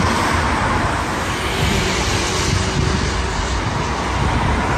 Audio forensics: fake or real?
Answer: real